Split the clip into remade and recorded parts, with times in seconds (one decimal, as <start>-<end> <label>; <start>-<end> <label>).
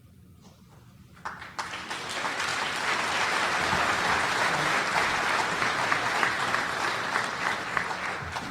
0.0-5.4 recorded; 5.4-6.0 remade; 6.0-8.5 recorded